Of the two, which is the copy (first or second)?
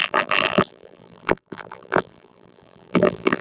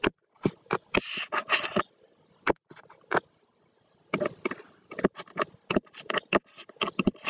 first